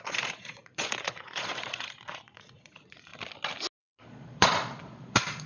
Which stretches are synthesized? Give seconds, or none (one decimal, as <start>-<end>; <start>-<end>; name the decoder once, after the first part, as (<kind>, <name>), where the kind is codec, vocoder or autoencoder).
0.0-3.1 (vocoder, Vocos); 3.8-5.5